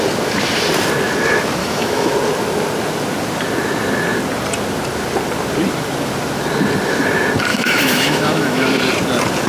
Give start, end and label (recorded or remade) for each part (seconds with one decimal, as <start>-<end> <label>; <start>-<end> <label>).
0.0-1.6 recorded; 1.6-2.1 remade; 2.1-7.5 recorded; 7.5-8.8 remade; 8.8-9.5 recorded